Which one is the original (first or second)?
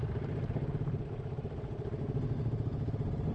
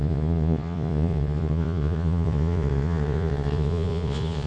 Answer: first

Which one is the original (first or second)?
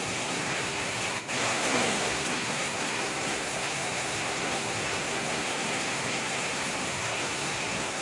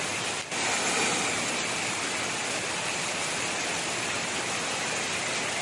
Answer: second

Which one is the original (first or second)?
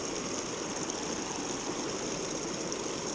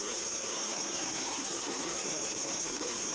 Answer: first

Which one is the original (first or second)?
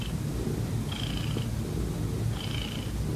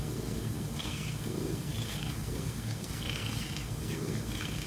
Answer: first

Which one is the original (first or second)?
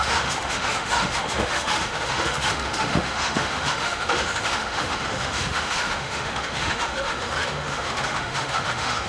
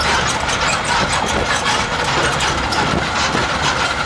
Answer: second